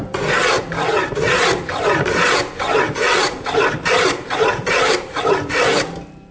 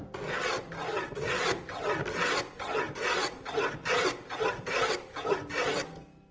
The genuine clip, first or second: second